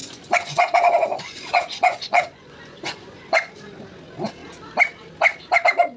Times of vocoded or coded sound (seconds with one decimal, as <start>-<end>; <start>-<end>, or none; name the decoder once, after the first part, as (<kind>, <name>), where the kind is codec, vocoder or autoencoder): 0.0-3.6 (vocoder, Vocos)